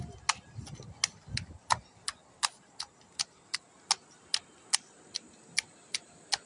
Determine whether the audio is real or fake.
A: real